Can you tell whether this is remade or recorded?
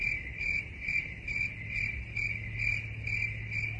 recorded